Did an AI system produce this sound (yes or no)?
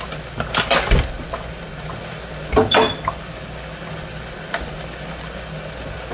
no